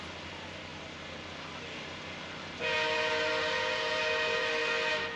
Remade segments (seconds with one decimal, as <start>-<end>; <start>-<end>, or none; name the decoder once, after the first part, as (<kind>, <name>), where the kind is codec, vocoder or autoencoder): none